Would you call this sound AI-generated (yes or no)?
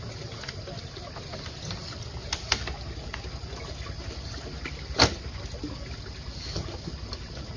no